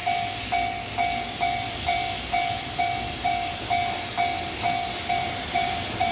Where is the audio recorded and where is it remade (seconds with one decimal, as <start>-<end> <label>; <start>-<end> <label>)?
0.0-1.3 recorded; 1.3-3.8 remade; 3.8-5.1 recorded; 5.1-6.1 remade